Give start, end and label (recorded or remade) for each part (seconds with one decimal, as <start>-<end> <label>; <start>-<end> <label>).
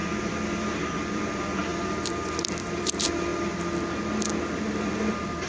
0.0-3.3 remade; 3.3-4.4 recorded; 4.4-5.5 remade